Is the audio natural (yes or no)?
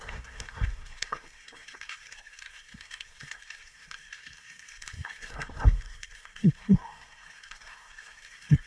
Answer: no